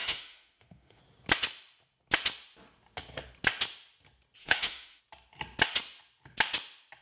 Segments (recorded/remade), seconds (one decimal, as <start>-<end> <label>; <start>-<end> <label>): 0.0-1.0 remade; 1.0-4.4 recorded; 4.4-5.0 remade; 5.0-7.0 recorded